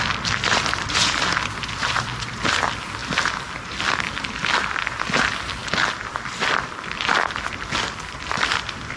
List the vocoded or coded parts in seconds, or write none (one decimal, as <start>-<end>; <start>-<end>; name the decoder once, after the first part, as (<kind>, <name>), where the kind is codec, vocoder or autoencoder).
0.0-9.0 (vocoder, BigVGAN v2)